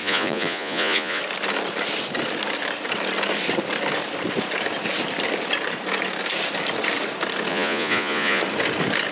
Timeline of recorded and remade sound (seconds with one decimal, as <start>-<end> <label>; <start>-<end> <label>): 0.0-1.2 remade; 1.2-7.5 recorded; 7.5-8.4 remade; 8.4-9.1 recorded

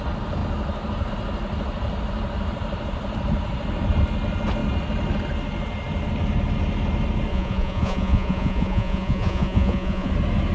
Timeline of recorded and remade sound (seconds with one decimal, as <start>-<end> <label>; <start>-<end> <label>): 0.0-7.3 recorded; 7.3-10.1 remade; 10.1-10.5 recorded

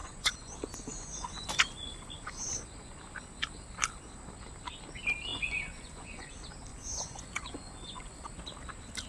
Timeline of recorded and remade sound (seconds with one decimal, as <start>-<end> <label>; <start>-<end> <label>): 0.0-3.0 remade; 3.0-5.3 recorded; 5.3-6.3 remade; 6.3-6.7 recorded; 6.7-8.3 remade; 8.3-9.1 recorded

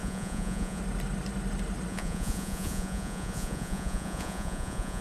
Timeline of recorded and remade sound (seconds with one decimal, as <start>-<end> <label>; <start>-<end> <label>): 0.0-0.8 remade; 0.8-1.9 recorded; 1.9-5.0 remade

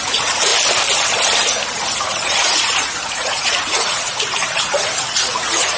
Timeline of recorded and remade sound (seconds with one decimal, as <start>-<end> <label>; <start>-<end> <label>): 0.0-0.5 remade; 0.5-2.0 recorded; 2.0-4.4 remade; 4.4-5.0 recorded; 5.0-5.8 remade

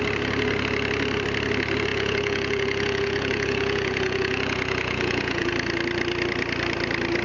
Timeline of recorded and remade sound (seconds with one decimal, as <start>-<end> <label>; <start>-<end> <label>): 0.0-1.9 recorded; 1.9-5.5 remade; 5.5-7.2 recorded

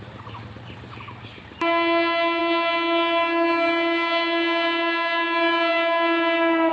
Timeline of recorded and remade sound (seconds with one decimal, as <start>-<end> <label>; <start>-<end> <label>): 0.0-6.7 recorded